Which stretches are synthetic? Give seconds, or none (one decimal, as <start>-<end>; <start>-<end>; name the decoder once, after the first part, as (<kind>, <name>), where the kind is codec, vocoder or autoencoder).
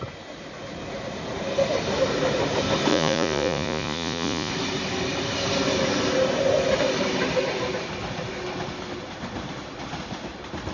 2.9-4.5 (vocoder, Vocos)